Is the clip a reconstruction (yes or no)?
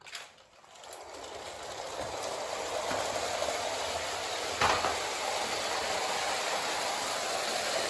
no